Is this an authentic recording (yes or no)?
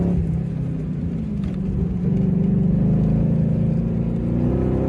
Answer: yes